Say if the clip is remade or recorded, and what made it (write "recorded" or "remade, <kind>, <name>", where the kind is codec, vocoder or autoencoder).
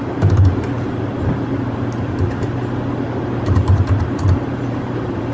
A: remade, vocoder, BigVGAN v2